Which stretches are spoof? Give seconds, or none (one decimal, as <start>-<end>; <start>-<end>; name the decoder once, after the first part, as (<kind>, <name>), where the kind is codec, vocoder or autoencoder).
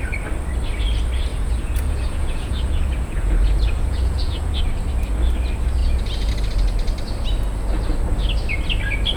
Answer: 1.3-4.6 (vocoder, Vocos); 5.8-6.3